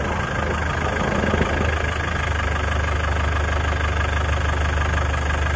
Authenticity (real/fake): real